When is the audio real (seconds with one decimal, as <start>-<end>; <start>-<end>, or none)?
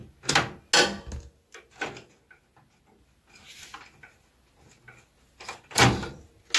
0.0-6.6